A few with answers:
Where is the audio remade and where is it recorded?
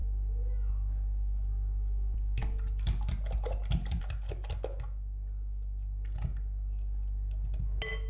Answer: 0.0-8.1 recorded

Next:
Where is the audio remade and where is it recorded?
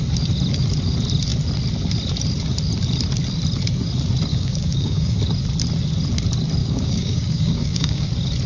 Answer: 0.0-4.3 recorded; 4.3-5.2 remade; 5.2-6.6 recorded; 6.6-8.1 remade; 8.1-8.5 recorded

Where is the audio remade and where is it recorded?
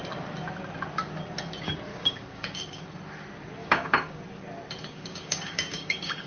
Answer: 0.0-1.9 recorded; 1.9-2.8 remade; 2.8-3.6 recorded; 3.6-4.2 remade; 4.2-4.8 recorded; 4.8-6.3 remade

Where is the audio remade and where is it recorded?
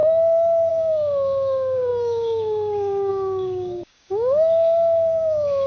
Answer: 0.0-0.7 recorded; 0.7-5.7 remade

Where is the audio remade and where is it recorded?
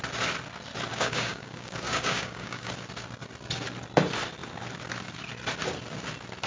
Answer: 0.0-0.9 recorded; 0.9-2.7 remade; 2.7-6.5 recorded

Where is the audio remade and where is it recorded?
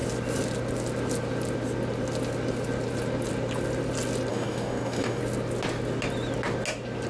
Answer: 0.0-4.3 recorded; 4.3-5.2 remade; 5.2-7.1 recorded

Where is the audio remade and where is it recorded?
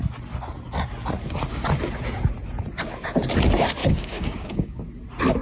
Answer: 0.0-3.8 recorded; 3.8-4.8 remade; 4.8-5.4 recorded